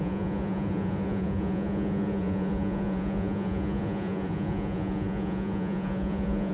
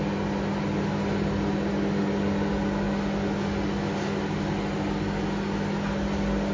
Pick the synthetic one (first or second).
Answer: first